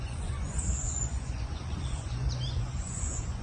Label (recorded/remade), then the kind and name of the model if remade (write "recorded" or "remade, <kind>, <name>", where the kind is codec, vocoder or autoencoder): remade, vocoder, Vocos